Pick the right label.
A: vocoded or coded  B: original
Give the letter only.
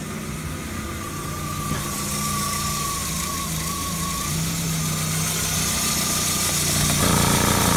B